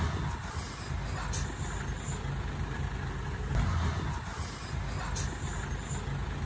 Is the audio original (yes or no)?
yes